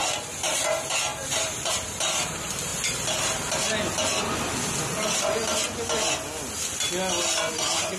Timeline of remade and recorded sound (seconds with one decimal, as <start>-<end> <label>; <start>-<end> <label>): 0.0-0.5 recorded; 0.5-2.7 remade; 2.7-7.5 recorded; 7.5-8.0 remade